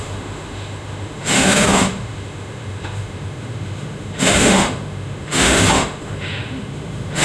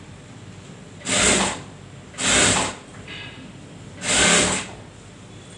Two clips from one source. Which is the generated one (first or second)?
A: first